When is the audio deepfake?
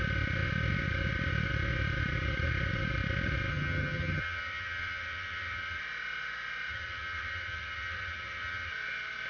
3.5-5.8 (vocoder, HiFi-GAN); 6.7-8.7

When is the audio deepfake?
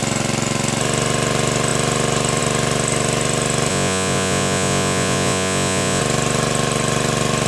3.7-6.0 (vocoder, Vocos)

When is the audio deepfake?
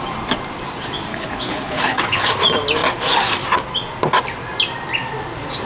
1.1-2.3 (codec, HILCodec)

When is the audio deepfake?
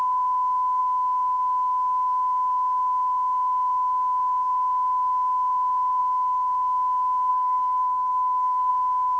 7.3-8.7 (codec, SNAC)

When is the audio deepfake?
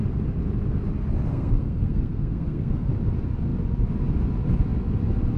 1.3-2.9 (codec, SNAC)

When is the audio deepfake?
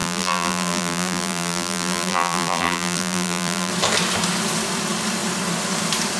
0.0-3.7 (vocoder, BigVGAN v2)